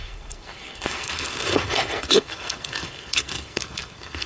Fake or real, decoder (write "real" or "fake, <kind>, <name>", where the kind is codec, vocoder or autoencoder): fake, codec, SNAC